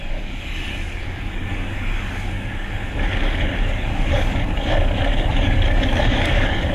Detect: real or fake fake